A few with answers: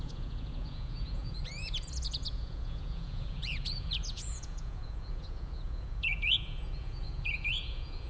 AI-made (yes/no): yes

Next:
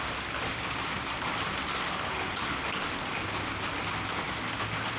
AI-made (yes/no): no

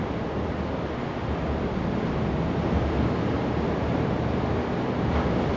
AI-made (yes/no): no